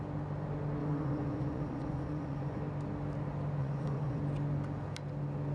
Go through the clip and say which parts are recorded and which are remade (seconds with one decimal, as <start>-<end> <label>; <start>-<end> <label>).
0.0-0.8 recorded; 0.8-2.6 remade; 2.6-3.6 recorded; 3.6-4.2 remade; 4.2-5.5 recorded